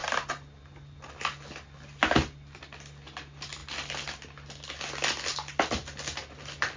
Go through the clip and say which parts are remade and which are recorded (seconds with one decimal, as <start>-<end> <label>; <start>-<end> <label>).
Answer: 0.0-6.8 recorded